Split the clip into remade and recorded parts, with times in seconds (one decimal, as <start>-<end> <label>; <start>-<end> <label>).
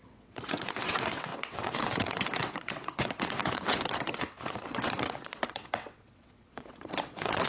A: 0.0-7.5 remade